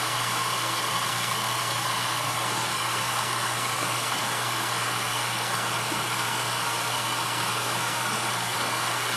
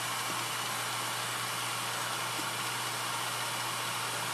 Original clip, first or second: second